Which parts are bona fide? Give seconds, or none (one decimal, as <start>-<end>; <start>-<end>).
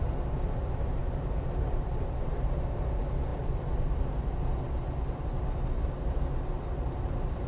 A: 0.0-1.0; 2.0-7.5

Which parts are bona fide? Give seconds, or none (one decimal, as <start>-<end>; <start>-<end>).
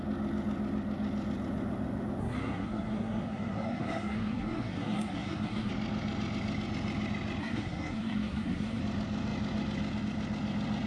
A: 0.0-2.2; 5.7-7.4; 8.8-10.9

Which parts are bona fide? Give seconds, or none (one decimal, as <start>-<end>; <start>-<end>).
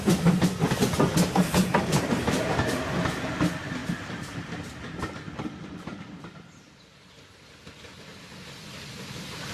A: 0.0-1.7; 2.8-3.8; 7.9-9.5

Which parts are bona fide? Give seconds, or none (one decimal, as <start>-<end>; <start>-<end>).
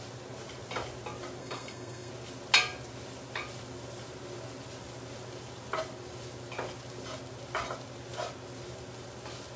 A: 0.0-1.4; 2.1-9.6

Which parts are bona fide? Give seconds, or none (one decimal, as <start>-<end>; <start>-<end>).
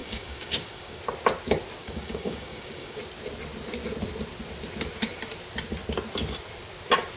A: 1.0-1.8; 3.0-7.2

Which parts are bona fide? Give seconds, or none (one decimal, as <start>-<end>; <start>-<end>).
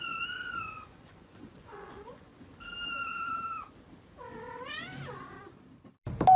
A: 2.3-6.4